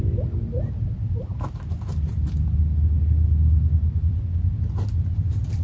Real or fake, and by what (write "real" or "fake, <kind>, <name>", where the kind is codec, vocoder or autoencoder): real